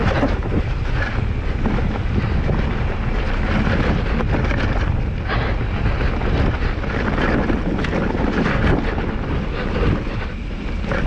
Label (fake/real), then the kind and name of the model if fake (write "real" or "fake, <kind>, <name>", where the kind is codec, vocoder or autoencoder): real